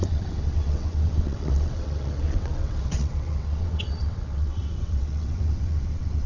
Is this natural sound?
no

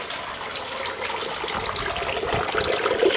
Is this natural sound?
yes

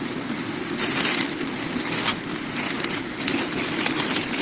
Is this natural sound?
yes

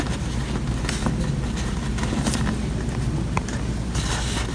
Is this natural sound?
yes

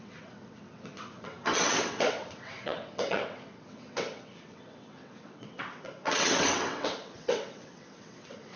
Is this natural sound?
no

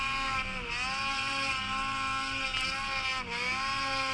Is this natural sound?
yes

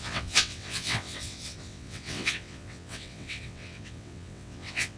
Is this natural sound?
no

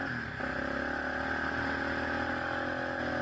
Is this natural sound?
yes